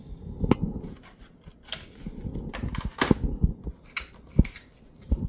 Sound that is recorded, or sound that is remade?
recorded